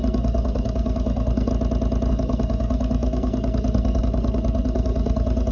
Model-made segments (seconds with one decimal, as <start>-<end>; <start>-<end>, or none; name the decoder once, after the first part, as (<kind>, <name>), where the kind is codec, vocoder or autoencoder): 0.0-1.5 (codec, SNAC); 2.1-5.5